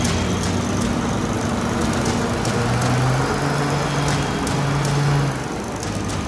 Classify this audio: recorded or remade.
recorded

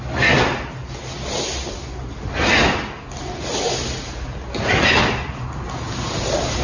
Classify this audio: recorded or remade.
recorded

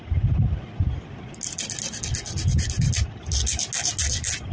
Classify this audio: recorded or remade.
recorded